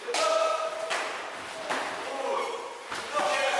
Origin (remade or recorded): recorded